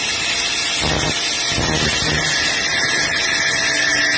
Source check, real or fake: real